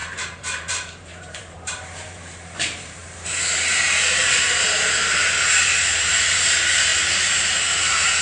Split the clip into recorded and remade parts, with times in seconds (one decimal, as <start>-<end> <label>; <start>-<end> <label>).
0.0-3.0 remade; 3.0-3.6 recorded; 3.6-8.2 remade